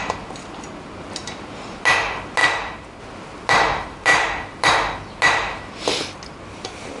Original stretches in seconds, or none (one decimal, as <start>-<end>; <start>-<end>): 0.0-7.0